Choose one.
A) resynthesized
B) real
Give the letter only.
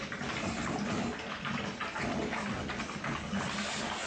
B